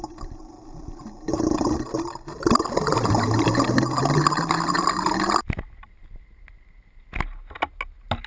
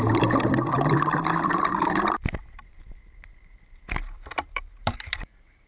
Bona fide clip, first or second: first